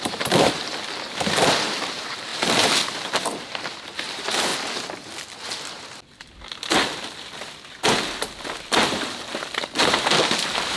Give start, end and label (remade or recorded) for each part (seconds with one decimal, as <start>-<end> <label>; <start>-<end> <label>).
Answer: 0.0-4.5 remade; 4.5-8.6 recorded; 8.6-10.8 remade